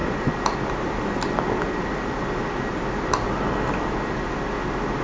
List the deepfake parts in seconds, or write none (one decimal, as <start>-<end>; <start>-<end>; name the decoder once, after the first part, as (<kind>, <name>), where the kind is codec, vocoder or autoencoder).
none